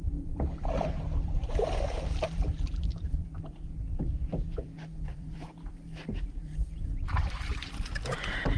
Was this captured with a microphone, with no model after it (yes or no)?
no